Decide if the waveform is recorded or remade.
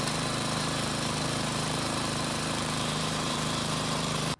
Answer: remade